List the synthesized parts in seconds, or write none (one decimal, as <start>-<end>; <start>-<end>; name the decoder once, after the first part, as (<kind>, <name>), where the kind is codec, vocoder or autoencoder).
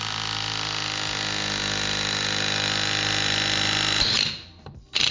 none